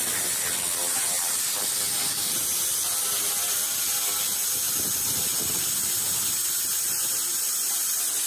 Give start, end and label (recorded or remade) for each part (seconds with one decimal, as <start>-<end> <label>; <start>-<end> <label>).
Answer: 0.0-0.8 recorded; 0.8-1.3 remade; 1.3-8.3 recorded